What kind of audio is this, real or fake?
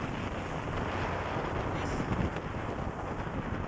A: real